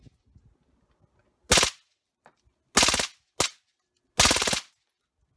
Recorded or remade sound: recorded